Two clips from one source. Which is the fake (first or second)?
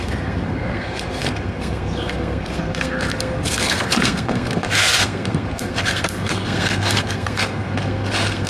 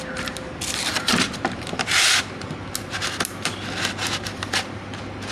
first